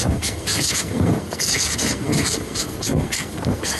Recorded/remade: remade